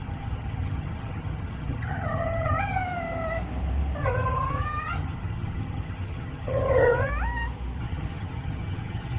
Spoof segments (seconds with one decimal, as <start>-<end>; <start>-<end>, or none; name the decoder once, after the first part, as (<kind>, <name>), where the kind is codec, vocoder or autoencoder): 0.0-2.8 (vocoder, HiFi-GAN); 4.0-7.1; 7.8-9.2